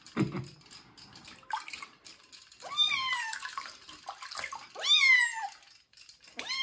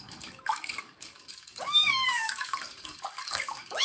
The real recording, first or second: first